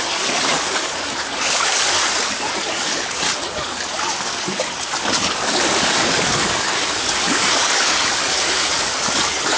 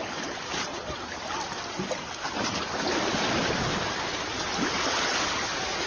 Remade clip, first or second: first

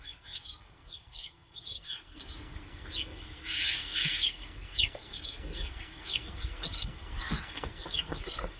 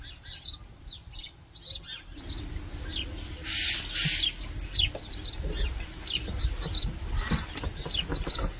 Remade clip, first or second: first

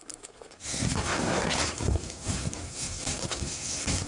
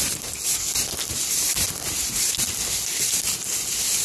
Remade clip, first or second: first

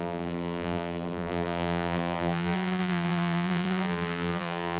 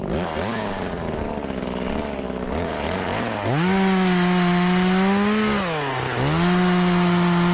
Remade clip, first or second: first